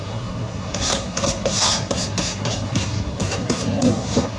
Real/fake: fake